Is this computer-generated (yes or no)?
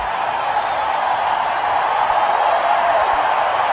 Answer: no